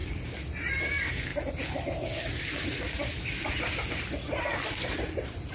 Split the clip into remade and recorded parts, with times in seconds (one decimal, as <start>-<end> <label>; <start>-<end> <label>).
0.0-5.5 recorded